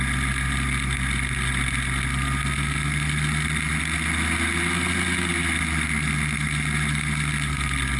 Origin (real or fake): real